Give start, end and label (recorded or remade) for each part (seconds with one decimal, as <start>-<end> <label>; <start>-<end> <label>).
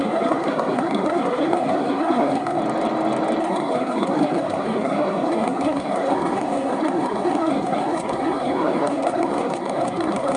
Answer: 0.0-2.6 remade; 2.6-3.4 recorded; 3.4-10.4 remade